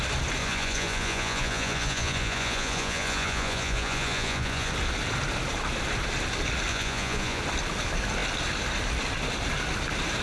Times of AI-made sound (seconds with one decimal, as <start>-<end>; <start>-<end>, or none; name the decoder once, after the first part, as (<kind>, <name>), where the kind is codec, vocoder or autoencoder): 0.4-4.7 (vocoder, Vocos); 6.7-7.4